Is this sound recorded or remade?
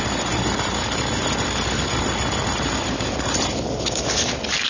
recorded